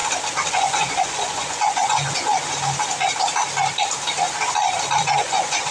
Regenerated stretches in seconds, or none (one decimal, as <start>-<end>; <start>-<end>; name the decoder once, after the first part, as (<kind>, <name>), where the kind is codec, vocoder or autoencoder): 0.5-2.3 (vocoder, Vocos); 5.0-5.7